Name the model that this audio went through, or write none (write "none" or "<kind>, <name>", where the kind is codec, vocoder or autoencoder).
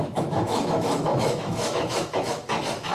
autoencoder, DAC-VAE